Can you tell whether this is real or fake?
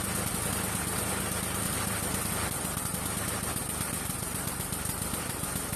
real